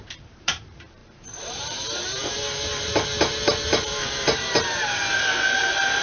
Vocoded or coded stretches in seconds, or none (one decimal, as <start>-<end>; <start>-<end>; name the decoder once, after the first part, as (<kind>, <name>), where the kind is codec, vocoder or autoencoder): 0.0-5.0 (vocoder, BigVGAN v2); 5.6-6.0